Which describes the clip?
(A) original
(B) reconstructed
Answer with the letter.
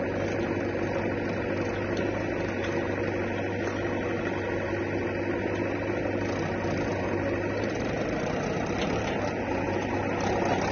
A